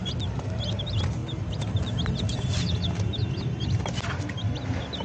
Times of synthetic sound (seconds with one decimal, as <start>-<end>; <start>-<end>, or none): none